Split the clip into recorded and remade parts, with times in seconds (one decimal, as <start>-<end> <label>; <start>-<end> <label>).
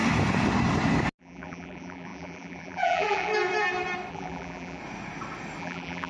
0.0-1.2 recorded; 1.2-3.3 remade; 3.3-4.1 recorded; 4.1-4.8 remade; 4.8-5.6 recorded; 5.6-6.1 remade